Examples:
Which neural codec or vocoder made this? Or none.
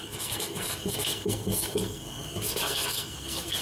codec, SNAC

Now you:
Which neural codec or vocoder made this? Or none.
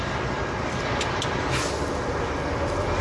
none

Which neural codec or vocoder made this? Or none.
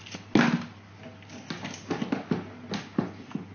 none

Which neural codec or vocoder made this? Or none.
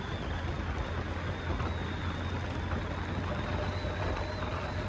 none